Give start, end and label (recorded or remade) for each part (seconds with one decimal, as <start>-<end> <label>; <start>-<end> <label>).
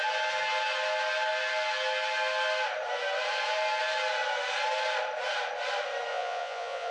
0.0-6.1 recorded; 6.1-6.9 remade